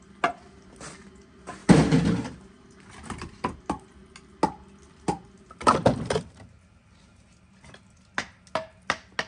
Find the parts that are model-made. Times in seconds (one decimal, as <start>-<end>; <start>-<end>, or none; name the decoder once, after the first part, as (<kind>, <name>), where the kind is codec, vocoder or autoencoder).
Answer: 1.6-3.6 (vocoder, BigVGAN v2); 5.7-6.6